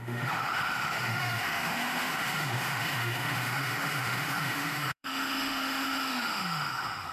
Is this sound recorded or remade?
remade